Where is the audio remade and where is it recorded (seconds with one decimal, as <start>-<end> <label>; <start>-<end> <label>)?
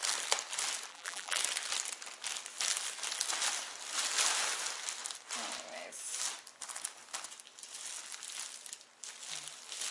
0.0-0.9 recorded; 0.9-1.4 remade; 1.4-9.9 recorded